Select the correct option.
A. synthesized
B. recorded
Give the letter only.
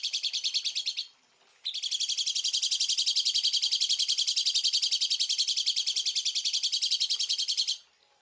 B